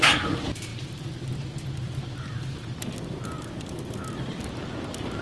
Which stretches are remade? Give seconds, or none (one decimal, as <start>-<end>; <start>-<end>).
none